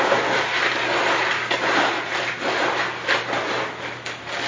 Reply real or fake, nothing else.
real